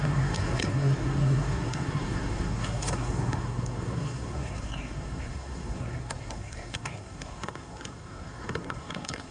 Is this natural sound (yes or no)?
no